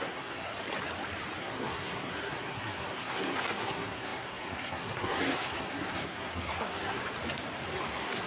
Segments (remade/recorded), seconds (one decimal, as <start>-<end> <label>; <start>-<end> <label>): 0.0-0.5 remade; 0.5-1.4 recorded; 1.4-7.0 remade; 7.0-7.9 recorded; 7.9-8.3 remade